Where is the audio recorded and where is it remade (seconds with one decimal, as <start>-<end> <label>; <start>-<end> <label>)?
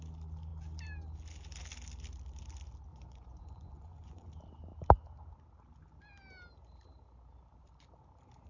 0.0-2.9 recorded; 2.9-4.3 remade; 4.3-8.5 recorded